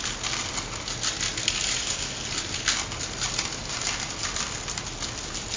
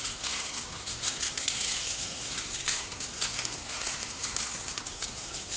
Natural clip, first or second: first